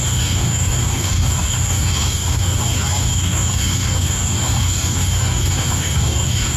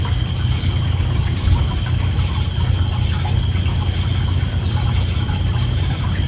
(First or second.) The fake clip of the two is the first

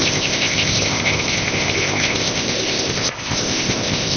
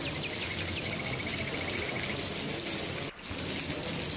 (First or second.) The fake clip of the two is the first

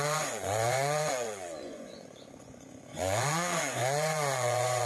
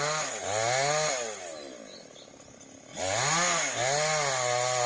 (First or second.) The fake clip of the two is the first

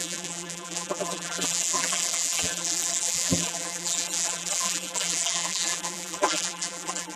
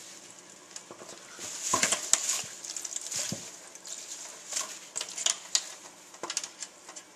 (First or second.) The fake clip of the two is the first